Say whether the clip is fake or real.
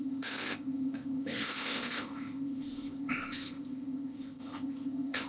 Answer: fake